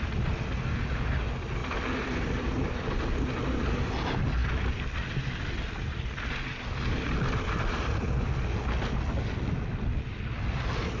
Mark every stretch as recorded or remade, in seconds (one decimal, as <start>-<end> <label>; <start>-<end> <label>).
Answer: 0.0-1.6 recorded; 1.6-3.6 remade; 3.6-11.0 recorded